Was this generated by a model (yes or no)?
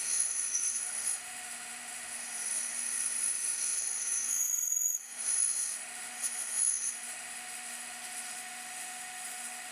yes